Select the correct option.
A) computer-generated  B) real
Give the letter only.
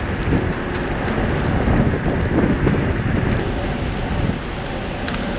B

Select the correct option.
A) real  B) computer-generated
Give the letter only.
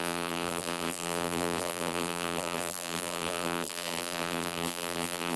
B